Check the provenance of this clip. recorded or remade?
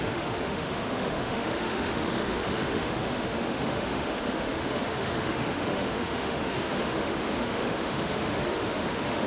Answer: remade